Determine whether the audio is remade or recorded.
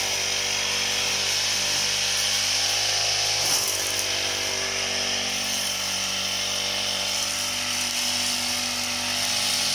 recorded